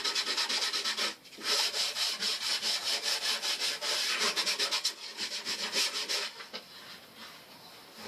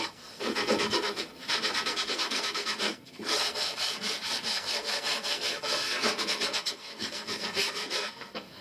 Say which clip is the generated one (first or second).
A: second